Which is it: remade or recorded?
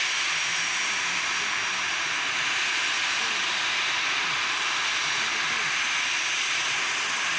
recorded